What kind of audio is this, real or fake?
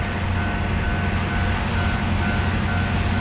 real